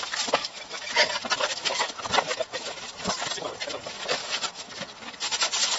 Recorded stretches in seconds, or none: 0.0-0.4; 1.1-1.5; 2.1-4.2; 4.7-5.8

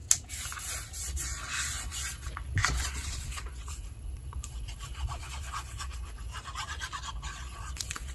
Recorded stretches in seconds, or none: 0.0-1.0; 6.3-7.0

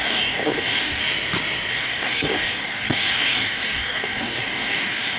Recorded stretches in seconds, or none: 1.0-1.7

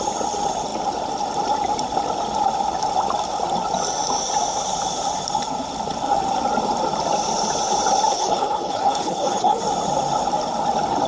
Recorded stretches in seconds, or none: 0.0-8.1; 9.6-11.1

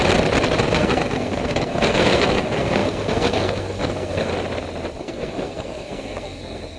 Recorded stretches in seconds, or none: 0.0-0.7; 4.3-5.0

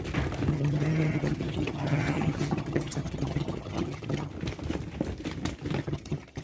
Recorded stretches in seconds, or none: 0.0-0.5; 4.3-5.8

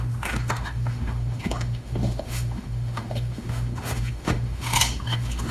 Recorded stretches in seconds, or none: none